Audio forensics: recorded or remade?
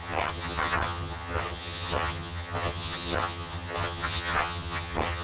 remade